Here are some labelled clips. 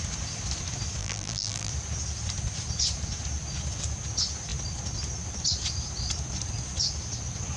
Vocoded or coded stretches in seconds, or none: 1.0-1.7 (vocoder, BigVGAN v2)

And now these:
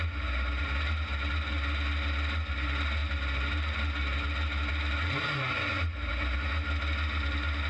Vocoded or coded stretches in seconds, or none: none

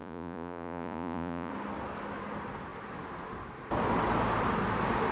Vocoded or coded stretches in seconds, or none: 0.0-1.5 (vocoder, Vocos)